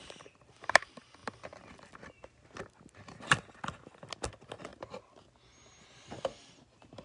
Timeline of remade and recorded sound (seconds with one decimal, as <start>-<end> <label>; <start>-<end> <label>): 0.0-7.0 recorded